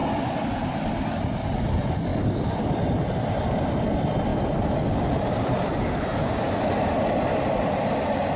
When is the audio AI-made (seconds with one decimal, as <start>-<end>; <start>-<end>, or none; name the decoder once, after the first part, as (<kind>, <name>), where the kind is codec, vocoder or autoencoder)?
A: 1.7-4.3 (vocoder, BigVGAN v2); 4.9-6.1; 6.7-8.4